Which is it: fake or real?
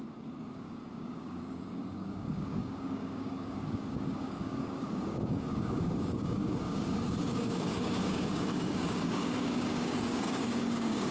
fake